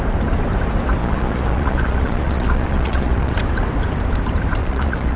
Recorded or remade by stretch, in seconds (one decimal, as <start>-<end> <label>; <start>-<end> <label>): 0.0-1.0 recorded; 1.0-3.4 remade; 3.4-4.6 recorded; 4.6-5.2 remade